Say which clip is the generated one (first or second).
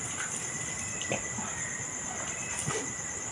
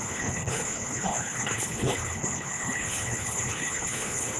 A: second